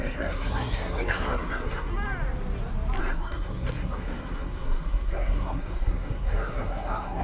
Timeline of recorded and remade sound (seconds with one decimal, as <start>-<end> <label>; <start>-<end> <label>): 0.0-1.9 remade; 1.9-3.0 recorded; 3.0-7.2 remade